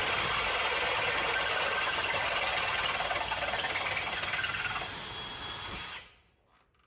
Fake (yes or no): no